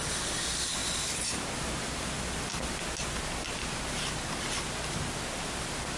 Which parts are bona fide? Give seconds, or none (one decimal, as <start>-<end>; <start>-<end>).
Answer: 0.0-6.0